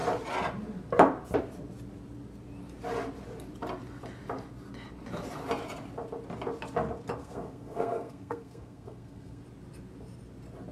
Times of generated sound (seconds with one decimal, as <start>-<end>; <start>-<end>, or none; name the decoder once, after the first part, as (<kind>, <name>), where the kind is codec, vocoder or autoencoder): 7.2-9.4 (codec, SNAC)

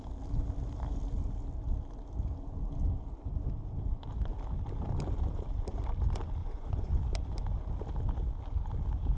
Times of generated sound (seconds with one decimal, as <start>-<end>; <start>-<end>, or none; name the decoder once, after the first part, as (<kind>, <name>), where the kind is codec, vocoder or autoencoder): 6.4-7.0 (vocoder, Vocos)

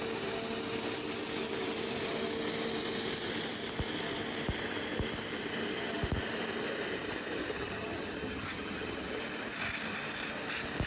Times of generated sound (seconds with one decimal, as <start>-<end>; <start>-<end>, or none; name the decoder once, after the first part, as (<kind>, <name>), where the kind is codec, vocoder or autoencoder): 7.4-9.2 (vocoder, HiFi-GAN)

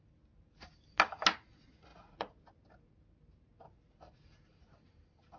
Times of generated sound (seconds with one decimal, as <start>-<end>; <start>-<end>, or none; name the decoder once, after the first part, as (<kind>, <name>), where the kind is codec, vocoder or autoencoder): 1.9-2.4 (vocoder, Vocos)

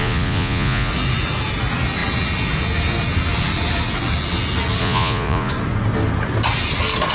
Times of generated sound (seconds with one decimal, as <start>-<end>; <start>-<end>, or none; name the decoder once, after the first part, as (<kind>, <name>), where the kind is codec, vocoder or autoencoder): 0.0-0.9 (vocoder, Vocos); 4.8-5.5

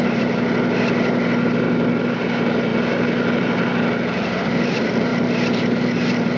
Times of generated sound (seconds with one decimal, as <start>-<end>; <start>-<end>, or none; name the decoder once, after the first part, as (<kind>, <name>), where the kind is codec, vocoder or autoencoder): none